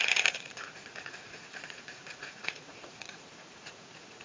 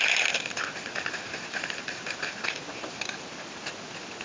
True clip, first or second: second